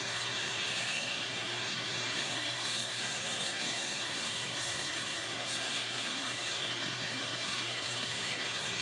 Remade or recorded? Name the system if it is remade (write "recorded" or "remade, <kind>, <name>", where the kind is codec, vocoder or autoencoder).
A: remade, codec, SNAC